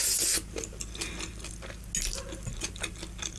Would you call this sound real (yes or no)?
yes